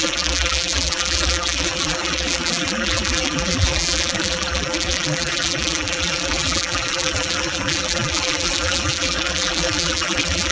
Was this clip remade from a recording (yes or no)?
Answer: yes